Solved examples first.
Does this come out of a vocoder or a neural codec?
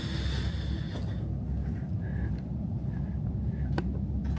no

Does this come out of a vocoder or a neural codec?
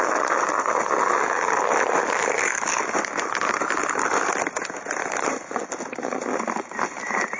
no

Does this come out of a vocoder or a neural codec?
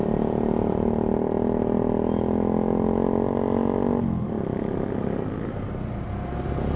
no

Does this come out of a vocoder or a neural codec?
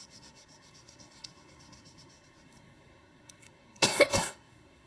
yes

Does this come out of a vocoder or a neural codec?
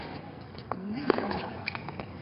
yes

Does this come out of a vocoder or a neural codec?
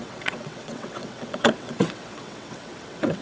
yes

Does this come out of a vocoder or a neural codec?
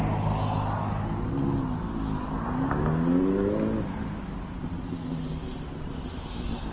no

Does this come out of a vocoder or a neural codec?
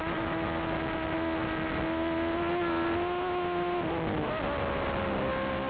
no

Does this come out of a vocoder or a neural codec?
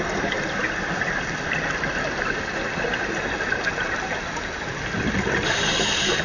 no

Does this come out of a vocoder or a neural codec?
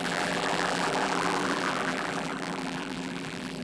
yes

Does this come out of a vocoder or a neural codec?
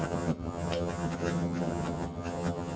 yes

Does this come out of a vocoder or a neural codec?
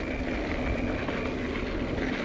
no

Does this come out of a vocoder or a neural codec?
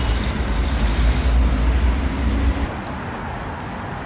no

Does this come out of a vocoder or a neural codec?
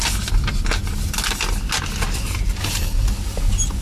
no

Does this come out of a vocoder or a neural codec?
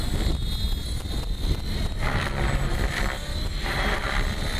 no